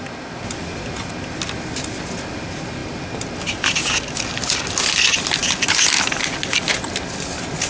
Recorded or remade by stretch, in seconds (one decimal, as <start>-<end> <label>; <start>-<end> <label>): 0.0-7.7 recorded